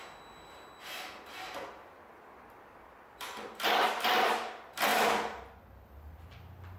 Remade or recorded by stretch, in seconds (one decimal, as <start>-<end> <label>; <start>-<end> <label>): 0.0-6.8 recorded